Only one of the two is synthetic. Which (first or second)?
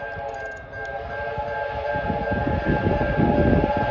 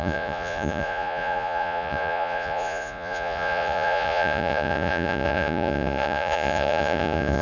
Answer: second